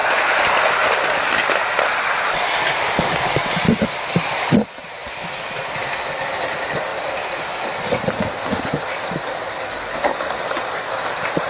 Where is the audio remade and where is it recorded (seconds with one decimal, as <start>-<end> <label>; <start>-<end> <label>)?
0.0-11.5 recorded